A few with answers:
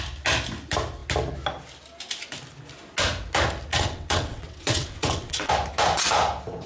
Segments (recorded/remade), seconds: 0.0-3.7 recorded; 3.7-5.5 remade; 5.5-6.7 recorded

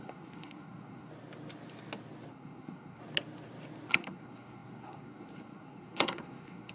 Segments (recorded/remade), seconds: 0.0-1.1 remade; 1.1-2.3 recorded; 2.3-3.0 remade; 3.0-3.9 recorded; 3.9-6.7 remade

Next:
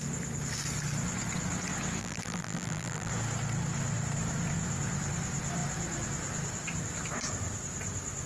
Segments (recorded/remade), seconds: 0.0-2.0 recorded; 2.0-3.1 remade; 3.1-8.3 recorded